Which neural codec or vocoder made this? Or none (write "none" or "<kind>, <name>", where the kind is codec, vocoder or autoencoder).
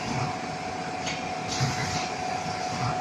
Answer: none